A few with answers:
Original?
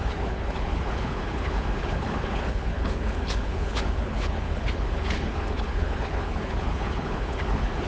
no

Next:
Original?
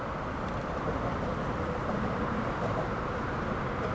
yes